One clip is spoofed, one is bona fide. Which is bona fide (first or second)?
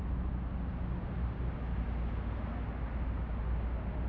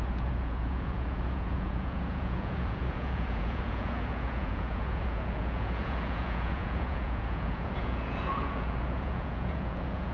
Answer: first